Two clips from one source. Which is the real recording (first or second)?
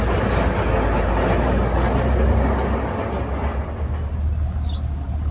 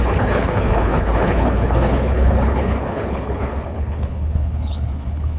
first